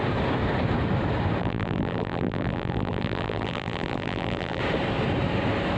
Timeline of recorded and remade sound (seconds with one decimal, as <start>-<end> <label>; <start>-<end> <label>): 0.0-1.4 recorded; 1.4-4.6 remade; 4.6-5.8 recorded